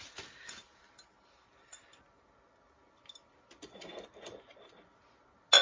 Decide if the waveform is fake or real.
real